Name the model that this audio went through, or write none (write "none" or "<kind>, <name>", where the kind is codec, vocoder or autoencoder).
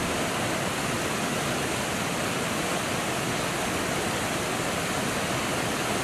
none